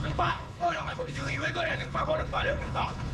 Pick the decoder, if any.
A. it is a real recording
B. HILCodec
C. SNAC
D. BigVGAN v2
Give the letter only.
B